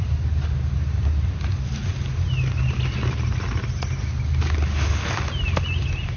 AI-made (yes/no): no